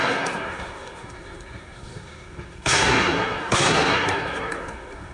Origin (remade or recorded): remade